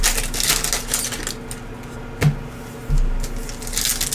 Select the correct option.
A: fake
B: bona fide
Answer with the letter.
B